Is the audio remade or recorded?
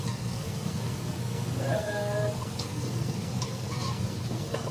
remade